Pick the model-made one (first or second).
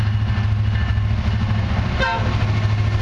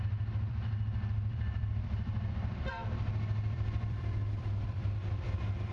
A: second